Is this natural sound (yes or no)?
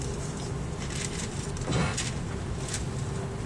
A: yes